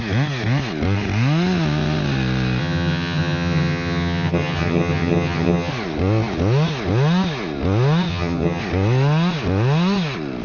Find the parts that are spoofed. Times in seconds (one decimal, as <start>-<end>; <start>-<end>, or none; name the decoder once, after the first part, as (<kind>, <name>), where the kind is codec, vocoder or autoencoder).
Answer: 2.6-5.7 (vocoder, HiFi-GAN); 8.1-8.6

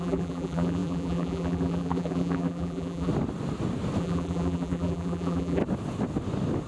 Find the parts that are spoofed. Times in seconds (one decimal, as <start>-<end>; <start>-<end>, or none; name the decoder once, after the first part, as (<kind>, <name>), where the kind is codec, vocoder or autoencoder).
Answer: 0.0-3.1 (vocoder, BigVGAN v2); 4.0-5.6

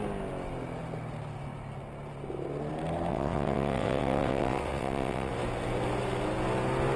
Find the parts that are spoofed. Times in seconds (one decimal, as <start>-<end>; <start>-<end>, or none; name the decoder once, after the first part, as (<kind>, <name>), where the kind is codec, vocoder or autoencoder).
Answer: 3.1-5.3 (vocoder, WaveNeXt)

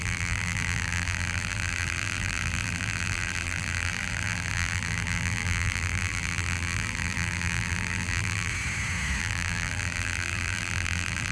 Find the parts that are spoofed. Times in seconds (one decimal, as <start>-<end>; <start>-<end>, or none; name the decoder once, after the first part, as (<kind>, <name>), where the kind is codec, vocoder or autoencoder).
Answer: 0.0-8.5 (vocoder, BigVGAN v2); 9.2-11.3

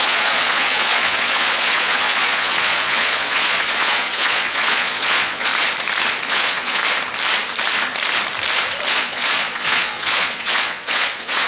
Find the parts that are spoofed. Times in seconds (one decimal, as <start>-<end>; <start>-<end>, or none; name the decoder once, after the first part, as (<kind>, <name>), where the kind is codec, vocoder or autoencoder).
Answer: 0.0-5.5 (vocoder, Vocos); 6.3-6.8; 8.9-11.5

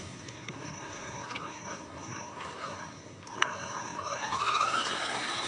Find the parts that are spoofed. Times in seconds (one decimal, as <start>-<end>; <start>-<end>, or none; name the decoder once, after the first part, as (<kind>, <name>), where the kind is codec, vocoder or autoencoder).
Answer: 0.0-5.5 (codec, SNAC)

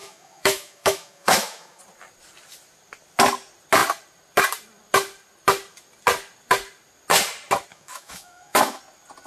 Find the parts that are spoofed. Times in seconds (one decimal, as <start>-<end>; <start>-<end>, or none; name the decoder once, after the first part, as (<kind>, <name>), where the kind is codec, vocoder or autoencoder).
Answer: 0.0-1.8 (autoencoder, DAC-VAE); 7.7-8.8